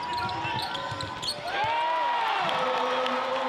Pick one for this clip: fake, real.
real